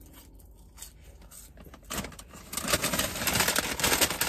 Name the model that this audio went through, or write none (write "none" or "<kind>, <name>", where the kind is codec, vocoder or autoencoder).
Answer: none